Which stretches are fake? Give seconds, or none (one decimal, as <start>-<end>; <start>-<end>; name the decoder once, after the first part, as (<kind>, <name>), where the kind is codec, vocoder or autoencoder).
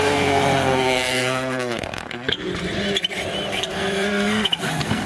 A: 0.0-2.5 (codec, SNAC); 3.5-5.1